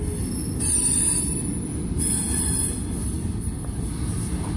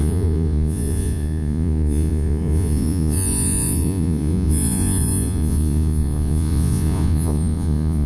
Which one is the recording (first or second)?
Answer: first